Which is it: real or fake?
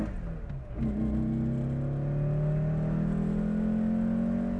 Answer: real